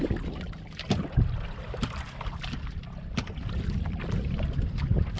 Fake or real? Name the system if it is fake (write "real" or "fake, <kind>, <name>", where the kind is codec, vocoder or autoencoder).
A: real